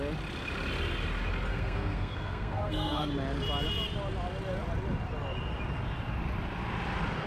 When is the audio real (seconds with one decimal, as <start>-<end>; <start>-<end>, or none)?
0.0-1.5; 3.1-7.3